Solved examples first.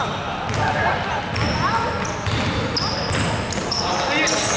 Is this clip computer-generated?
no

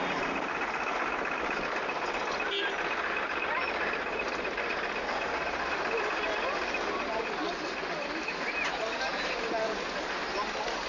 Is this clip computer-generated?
no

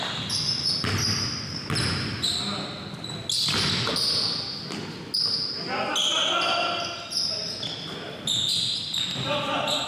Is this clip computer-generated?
no